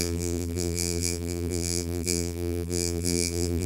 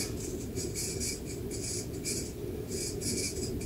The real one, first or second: second